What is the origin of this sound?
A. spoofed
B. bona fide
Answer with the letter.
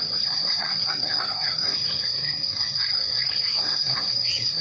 A